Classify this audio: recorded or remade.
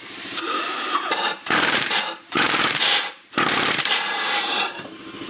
remade